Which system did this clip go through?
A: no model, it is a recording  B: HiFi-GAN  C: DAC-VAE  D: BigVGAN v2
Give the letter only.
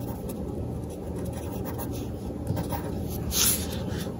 A